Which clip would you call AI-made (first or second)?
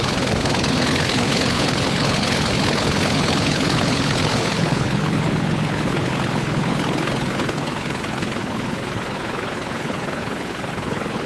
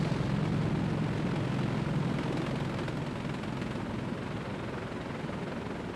first